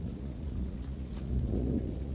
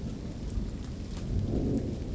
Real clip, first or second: second